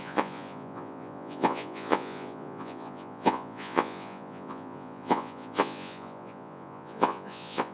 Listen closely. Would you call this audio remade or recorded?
remade